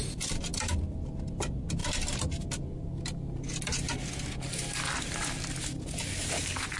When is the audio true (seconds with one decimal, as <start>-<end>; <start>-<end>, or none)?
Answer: 0.0-6.8